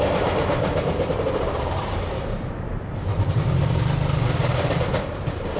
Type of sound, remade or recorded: remade